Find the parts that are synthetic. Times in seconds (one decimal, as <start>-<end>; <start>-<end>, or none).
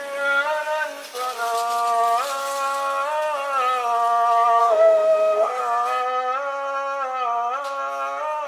4.6-5.6